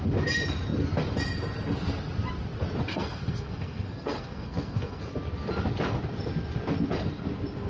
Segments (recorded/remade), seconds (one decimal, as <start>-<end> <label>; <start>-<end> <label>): 0.0-2.9 recorded; 2.9-5.0 remade; 5.0-7.7 recorded